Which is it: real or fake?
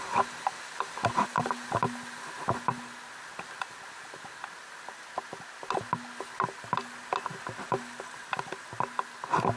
real